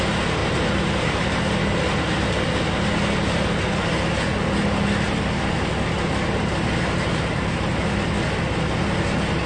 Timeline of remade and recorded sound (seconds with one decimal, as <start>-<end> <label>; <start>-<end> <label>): 0.0-0.4 recorded; 0.4-2.3 remade; 2.3-9.5 recorded